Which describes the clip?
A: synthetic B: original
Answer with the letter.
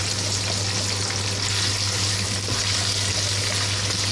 B